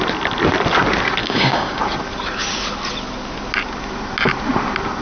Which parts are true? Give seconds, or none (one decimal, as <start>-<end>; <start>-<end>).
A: 0.0-1.2; 1.8-5.0